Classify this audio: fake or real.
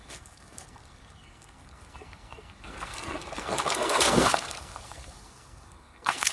fake